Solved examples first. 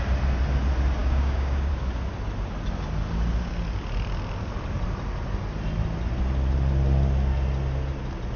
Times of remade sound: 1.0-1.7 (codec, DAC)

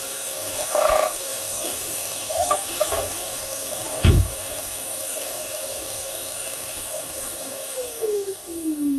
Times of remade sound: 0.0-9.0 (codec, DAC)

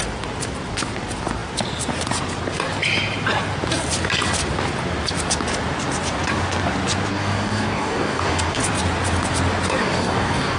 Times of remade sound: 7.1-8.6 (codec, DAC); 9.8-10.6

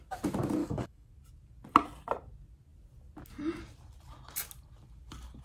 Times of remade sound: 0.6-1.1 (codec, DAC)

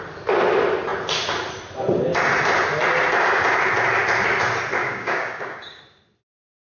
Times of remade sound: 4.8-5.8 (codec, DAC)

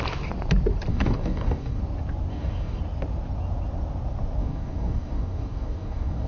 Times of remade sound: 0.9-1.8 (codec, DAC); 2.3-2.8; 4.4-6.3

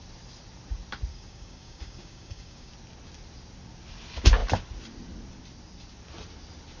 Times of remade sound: 1.1-2.7 (codec, DAC)